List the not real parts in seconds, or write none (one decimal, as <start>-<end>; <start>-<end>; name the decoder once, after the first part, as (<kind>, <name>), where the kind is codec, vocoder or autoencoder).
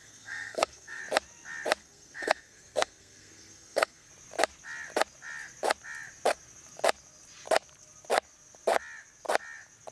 0.0-1.0 (codec, SNAC); 1.8-4.1